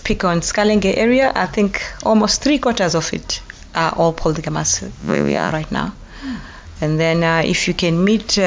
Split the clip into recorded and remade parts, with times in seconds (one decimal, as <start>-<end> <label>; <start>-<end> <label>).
0.0-5.0 recorded; 5.0-5.5 remade; 5.5-8.5 recorded